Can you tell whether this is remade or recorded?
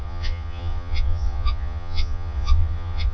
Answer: remade